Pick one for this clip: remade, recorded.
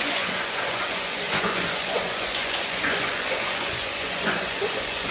remade